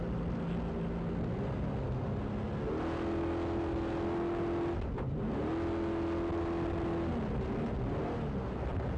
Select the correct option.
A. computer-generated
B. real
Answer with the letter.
B